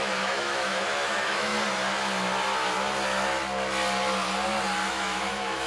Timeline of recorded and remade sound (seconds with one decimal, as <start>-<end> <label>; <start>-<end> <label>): 0.0-1.5 remade; 1.5-4.9 recorded; 4.9-5.7 remade